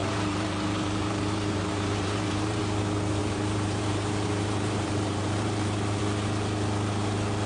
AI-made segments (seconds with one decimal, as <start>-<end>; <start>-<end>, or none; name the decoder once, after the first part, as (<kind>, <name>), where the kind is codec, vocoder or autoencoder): 0.0-2.6 (vocoder, BigVGAN v2); 3.2-6.0